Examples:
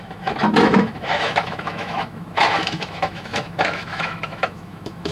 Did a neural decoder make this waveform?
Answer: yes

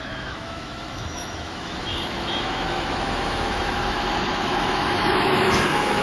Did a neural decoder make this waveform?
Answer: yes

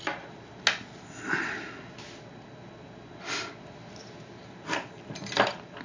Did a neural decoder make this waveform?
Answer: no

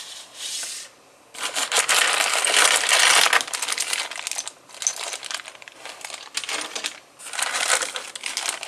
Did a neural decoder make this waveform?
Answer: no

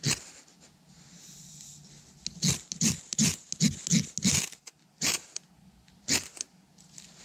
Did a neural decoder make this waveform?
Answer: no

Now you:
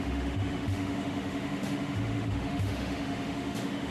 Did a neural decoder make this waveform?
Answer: yes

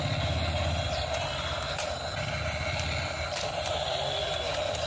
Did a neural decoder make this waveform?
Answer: no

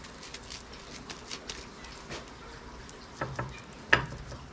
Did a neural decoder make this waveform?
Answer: no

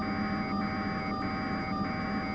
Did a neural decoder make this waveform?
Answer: no